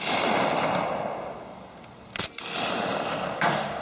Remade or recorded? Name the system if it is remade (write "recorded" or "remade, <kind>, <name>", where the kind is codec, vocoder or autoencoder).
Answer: recorded